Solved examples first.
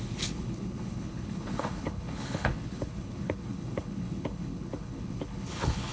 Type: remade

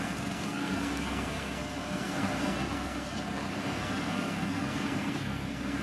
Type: remade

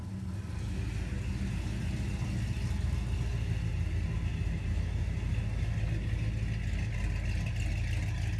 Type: recorded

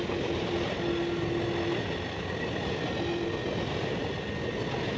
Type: recorded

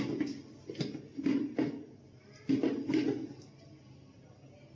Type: recorded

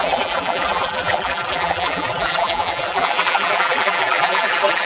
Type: remade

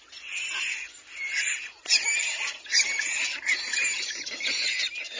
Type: recorded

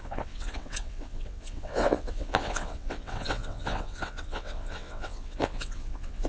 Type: remade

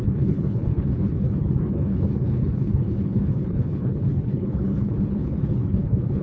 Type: remade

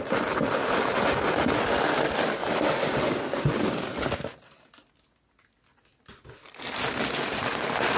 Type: recorded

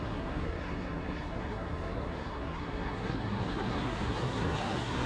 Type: remade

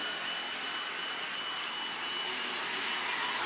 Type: recorded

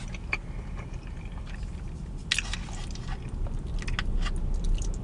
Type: recorded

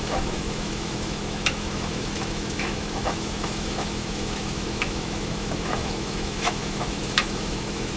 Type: remade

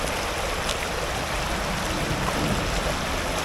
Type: recorded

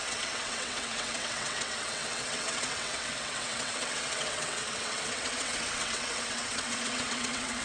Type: remade